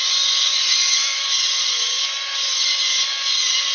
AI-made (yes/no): yes